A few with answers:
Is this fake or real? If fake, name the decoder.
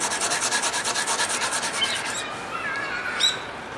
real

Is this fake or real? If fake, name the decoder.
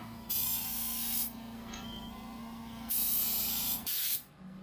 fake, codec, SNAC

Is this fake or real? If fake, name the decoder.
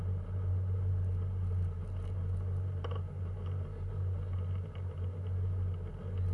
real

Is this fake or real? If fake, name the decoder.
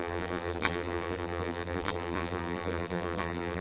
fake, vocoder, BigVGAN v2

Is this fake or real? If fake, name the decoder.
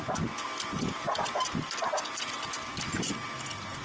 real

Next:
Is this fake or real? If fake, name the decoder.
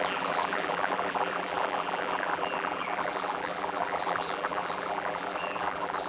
fake, vocoder, BigVGAN v2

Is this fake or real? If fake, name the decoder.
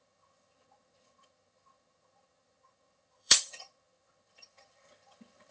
fake, vocoder, HiFi-GAN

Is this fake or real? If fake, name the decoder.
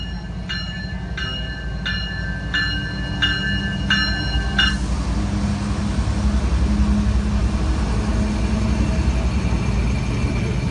real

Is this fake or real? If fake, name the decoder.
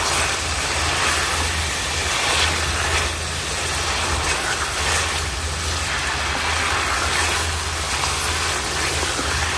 real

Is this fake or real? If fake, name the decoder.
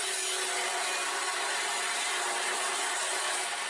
real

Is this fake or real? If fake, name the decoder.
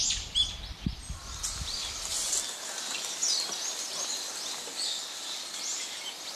real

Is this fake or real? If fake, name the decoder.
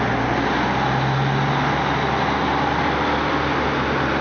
real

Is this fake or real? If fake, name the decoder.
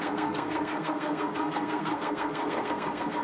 fake, codec, SNAC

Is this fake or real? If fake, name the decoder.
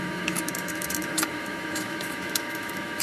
fake, autoencoder, DAC-VAE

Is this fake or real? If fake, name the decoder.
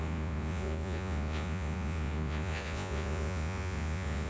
fake, vocoder, Vocos